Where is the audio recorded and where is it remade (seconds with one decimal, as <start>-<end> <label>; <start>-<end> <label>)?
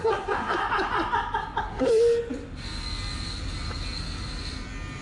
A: 0.0-0.6 remade; 0.6-1.6 recorded; 1.6-2.0 remade; 2.0-5.0 recorded